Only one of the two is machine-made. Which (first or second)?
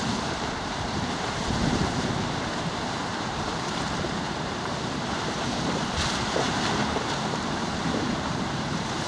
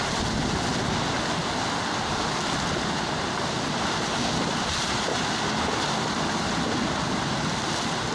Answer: first